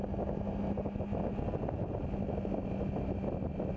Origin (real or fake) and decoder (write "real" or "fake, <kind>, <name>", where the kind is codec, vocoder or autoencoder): real